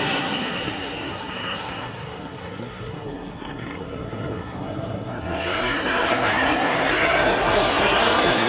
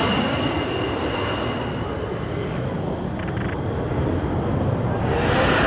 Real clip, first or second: second